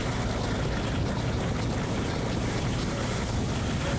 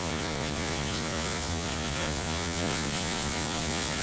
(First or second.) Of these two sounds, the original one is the first